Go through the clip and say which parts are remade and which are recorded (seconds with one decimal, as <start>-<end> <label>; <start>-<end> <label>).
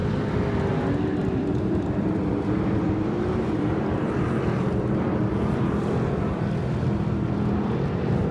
0.0-1.2 recorded; 1.2-6.2 remade; 6.2-8.3 recorded